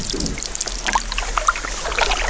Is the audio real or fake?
real